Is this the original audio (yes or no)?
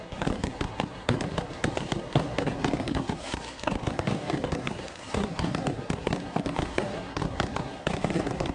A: no